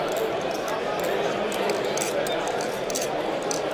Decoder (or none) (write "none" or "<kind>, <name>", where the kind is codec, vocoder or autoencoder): none